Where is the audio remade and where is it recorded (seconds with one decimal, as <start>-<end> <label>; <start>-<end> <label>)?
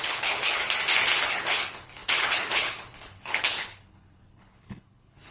0.0-0.6 remade; 0.6-1.3 recorded; 1.3-5.3 remade